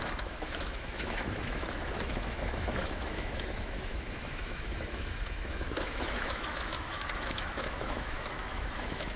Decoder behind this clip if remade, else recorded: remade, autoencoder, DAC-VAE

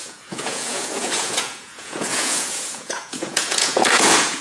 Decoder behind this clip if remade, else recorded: remade, vocoder, Vocos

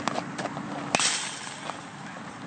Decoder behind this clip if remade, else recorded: recorded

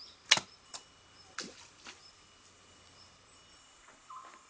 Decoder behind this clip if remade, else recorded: recorded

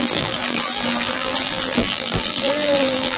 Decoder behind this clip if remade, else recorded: remade, vocoder, BigVGAN v2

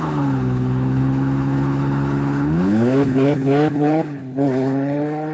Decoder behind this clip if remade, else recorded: remade, codec, HILCodec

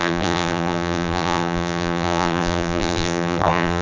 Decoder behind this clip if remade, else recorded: remade, vocoder, BigVGAN v2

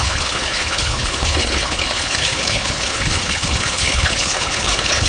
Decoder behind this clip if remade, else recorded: remade, codec, HILCodec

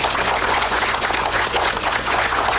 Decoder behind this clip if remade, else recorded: remade, vocoder, Vocos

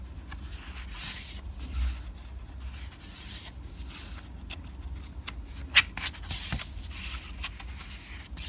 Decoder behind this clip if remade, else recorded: recorded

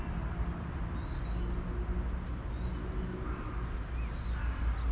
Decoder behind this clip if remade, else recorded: recorded